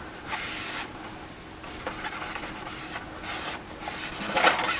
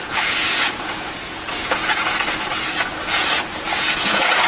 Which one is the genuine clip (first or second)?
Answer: first